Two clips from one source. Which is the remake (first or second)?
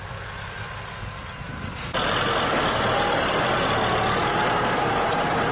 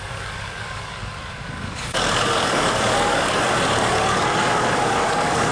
second